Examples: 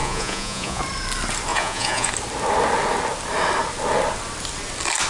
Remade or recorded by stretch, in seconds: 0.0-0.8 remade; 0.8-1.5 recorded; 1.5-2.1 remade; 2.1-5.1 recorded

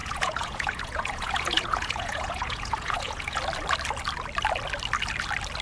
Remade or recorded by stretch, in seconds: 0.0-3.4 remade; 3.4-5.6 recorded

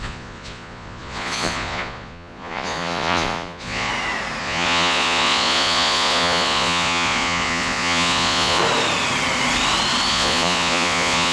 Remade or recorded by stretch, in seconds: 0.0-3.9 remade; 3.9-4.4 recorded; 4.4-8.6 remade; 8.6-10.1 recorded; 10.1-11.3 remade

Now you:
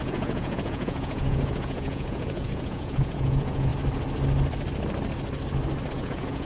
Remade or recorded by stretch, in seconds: 0.0-3.7 remade; 3.7-5.9 recorded; 5.9-6.5 remade

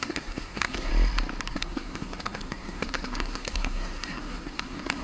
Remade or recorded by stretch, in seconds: 0.0-0.9 remade; 0.9-1.5 recorded; 1.5-5.0 remade

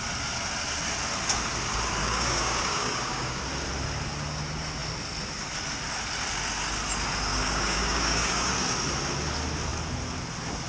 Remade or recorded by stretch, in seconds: 0.0-2.0 recorded; 2.0-3.4 remade; 3.4-7.3 recorded; 7.3-8.5 remade; 8.5-10.7 recorded

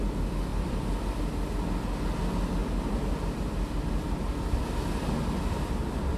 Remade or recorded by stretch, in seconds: 0.0-0.5 recorded; 0.5-1.1 remade; 1.1-2.6 recorded; 2.6-4.6 remade; 4.6-6.2 recorded

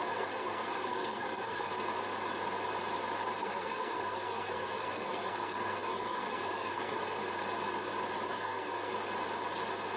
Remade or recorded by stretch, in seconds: 0.0-1.7 remade; 1.7-3.4 recorded; 3.4-7.0 remade; 7.0-8.3 recorded; 8.3-8.9 remade; 8.9-10.0 recorded